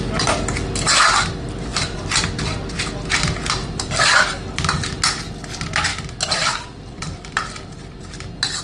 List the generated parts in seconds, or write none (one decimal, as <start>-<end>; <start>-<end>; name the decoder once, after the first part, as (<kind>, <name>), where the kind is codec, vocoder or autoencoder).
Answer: 3.6-4.3 (vocoder, BigVGAN v2); 5.9-8.0